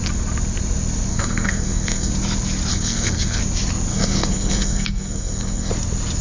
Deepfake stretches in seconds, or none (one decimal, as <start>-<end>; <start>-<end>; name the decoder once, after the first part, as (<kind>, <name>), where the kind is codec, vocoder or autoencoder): 1.1-2.1 (codec, SNAC); 2.7-3.4; 3.9-5.7